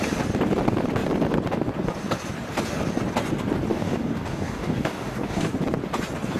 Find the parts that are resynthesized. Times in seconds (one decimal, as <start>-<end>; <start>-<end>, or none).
3.7-5.5